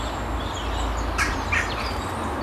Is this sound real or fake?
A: real